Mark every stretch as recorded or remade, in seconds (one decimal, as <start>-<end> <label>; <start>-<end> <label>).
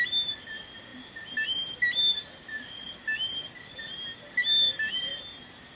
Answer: 0.0-5.8 recorded